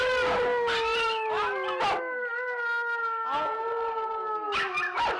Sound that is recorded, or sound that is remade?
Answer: recorded